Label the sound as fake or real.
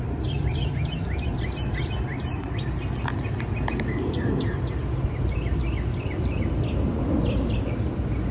real